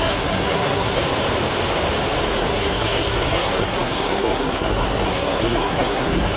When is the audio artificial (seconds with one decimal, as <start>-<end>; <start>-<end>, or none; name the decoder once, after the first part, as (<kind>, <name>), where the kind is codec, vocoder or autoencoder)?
0.0-1.0 (codec, SNAC); 2.4-6.4